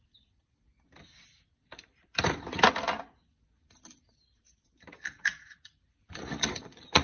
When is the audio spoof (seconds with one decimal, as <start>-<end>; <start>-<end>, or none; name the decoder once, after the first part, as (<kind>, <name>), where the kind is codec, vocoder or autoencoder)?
0.0-0.7 (vocoder, Vocos); 4.8-7.0